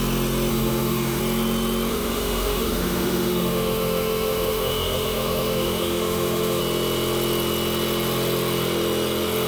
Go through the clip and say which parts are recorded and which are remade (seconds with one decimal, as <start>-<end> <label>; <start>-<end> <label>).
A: 0.0-0.5 recorded; 0.5-1.2 remade; 1.2-1.9 recorded; 1.9-6.6 remade; 6.6-9.5 recorded